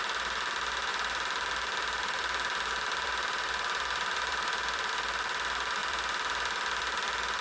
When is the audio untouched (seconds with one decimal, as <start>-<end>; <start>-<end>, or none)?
0.0-0.9; 4.9-5.8